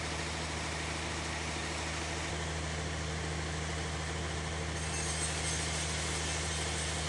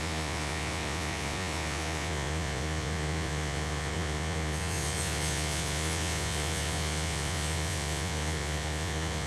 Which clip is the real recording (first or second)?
first